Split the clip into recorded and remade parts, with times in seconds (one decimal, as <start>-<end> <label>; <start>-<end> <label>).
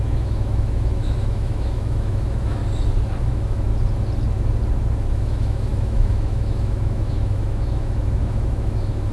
0.0-2.6 remade; 2.6-3.2 recorded; 3.2-3.7 remade; 3.7-5.1 recorded; 5.1-9.1 remade